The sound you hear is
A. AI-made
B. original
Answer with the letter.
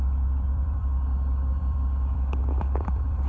A